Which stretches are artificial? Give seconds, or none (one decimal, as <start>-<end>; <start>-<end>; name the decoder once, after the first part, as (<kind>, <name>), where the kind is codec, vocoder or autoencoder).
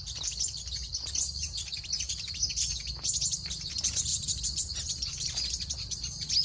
4.1-5.0 (vocoder, BigVGAN v2)